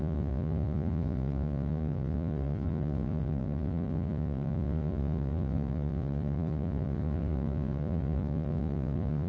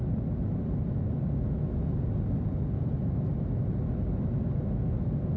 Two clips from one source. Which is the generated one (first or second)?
first